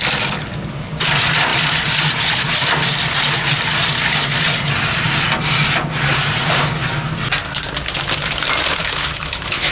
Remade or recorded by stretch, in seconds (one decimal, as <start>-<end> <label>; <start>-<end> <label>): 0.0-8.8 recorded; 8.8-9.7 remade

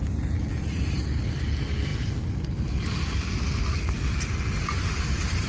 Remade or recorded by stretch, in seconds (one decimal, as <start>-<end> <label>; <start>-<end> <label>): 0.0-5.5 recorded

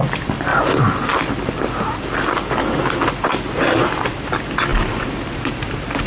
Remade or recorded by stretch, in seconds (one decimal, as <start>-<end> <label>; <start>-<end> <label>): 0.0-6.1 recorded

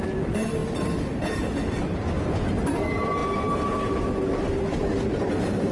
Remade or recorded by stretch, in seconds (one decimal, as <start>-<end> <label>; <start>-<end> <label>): 0.0-0.6 recorded; 0.6-1.9 remade; 1.9-5.7 recorded